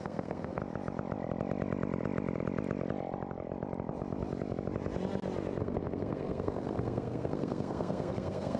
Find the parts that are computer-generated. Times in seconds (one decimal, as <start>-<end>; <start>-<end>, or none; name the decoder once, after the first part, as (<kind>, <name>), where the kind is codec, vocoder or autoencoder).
0.0-0.6 (codec, SNAC); 5.6-8.6

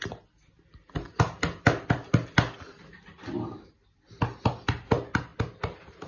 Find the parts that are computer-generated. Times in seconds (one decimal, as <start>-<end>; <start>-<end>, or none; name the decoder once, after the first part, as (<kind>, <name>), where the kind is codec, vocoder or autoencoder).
5.3-6.1 (vocoder, BigVGAN v2)

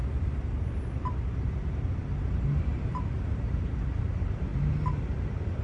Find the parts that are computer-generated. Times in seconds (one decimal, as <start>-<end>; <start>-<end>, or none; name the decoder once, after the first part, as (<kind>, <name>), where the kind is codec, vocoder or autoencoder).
none

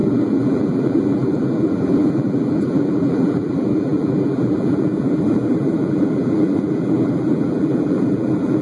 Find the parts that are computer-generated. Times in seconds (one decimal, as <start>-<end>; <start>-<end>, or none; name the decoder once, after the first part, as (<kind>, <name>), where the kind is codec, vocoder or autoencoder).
0.0-8.6 (vocoder, BigVGAN v2)

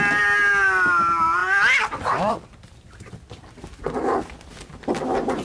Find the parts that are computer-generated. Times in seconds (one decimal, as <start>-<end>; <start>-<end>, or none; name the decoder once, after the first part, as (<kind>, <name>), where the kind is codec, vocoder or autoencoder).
none